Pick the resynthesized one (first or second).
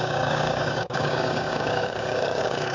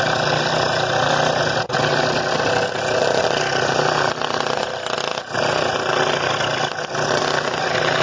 first